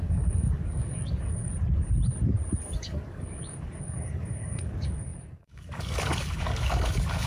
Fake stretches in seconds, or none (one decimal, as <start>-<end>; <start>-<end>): 0.0-1.5; 2.6-7.3